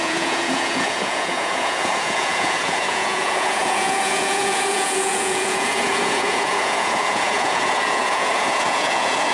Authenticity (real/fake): fake